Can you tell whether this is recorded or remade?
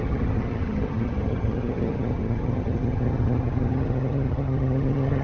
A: remade